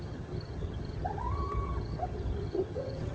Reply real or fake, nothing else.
fake